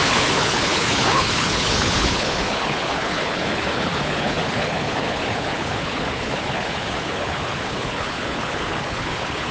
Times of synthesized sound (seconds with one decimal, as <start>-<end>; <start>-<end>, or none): 0.0-9.5